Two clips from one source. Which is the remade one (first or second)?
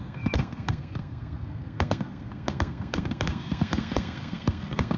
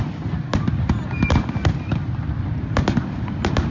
first